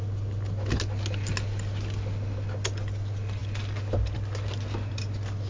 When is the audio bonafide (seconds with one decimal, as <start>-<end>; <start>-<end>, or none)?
0.0-5.5